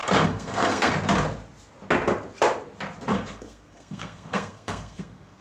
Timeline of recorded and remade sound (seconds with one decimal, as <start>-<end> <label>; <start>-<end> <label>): 0.0-0.9 remade; 0.9-3.1 recorded; 3.1-5.4 remade